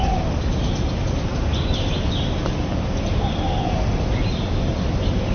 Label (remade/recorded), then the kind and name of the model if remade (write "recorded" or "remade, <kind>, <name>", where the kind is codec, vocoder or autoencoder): recorded